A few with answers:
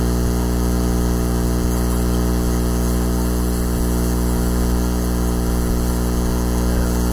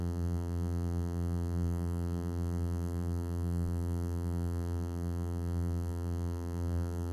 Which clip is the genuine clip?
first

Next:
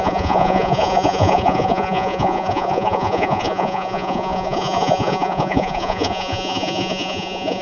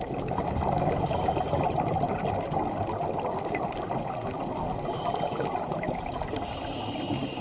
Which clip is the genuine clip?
second